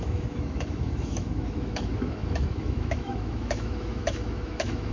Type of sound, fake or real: fake